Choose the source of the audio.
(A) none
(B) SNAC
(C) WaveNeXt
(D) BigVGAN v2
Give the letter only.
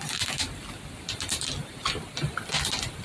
A